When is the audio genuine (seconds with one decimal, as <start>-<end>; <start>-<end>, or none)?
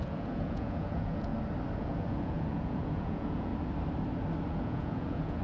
1.3-1.8; 3.5-4.5